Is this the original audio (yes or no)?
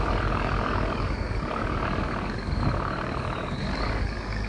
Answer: no